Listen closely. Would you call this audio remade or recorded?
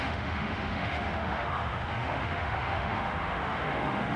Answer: remade